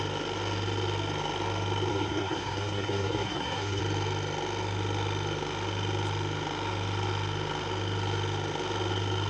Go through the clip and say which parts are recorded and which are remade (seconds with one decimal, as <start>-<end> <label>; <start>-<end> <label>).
0.0-1.9 recorded; 1.9-3.8 remade; 3.8-9.3 recorded